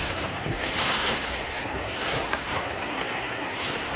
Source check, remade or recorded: remade